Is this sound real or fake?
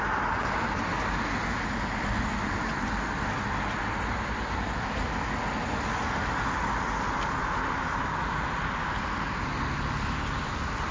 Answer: real